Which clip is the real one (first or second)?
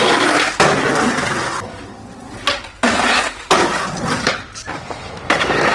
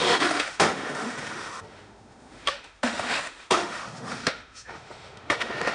first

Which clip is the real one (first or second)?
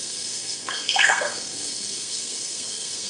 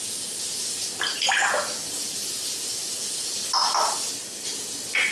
second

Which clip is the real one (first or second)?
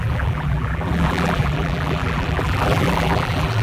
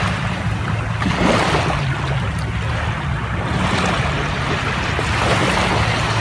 second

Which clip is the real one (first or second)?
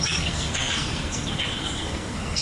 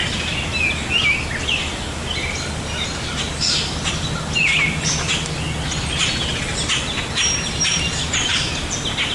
second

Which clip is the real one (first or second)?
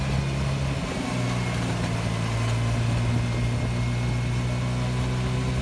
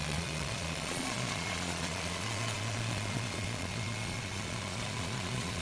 first